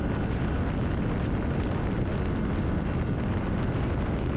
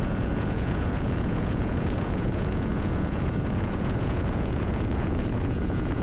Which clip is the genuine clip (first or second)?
first